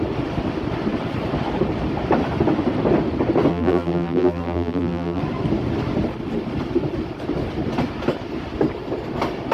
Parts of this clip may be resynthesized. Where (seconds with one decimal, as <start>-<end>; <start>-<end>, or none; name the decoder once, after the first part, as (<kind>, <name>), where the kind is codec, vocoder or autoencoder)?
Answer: 3.5-5.2 (vocoder, BigVGAN v2)